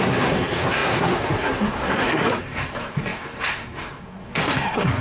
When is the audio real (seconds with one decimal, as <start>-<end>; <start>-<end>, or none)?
none